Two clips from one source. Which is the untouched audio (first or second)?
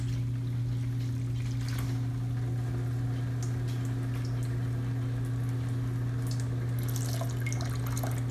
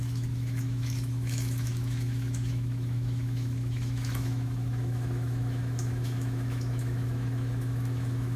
first